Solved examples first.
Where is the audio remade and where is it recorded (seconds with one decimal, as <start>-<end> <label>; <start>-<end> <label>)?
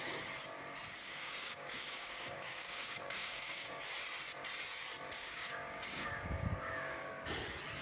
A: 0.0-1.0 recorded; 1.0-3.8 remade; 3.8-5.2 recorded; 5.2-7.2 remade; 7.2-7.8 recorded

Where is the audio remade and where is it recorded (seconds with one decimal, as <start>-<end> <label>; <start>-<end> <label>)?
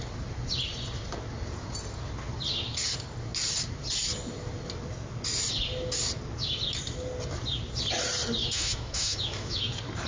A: 0.0-8.4 recorded; 8.4-9.7 remade; 9.7-10.1 recorded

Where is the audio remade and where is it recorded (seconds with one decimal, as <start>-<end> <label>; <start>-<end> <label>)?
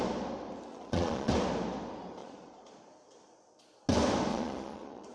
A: 0.0-0.7 recorded; 0.7-1.3 remade; 1.3-2.2 recorded; 2.2-2.7 remade; 2.7-4.3 recorded; 4.3-5.1 remade